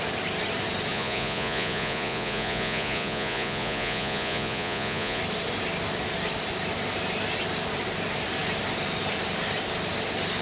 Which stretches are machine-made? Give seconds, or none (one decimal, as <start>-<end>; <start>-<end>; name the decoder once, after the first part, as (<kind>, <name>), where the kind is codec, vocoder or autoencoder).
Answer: 0.9-5.2 (vocoder, Vocos)